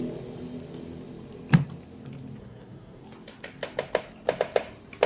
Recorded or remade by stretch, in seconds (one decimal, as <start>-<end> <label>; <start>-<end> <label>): 0.0-2.4 recorded; 2.4-3.0 remade; 3.0-5.1 recorded